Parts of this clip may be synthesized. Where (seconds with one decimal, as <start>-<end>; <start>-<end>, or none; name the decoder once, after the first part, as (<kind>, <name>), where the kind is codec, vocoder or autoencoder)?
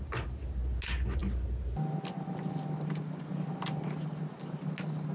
none